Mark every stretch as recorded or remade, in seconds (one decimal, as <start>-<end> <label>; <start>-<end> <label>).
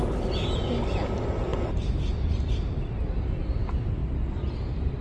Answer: 0.0-5.0 recorded